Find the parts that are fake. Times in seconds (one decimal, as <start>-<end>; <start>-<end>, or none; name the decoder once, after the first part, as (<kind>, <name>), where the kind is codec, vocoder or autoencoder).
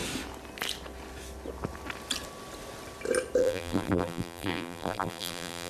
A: 3.4-5.7 (vocoder, BigVGAN v2)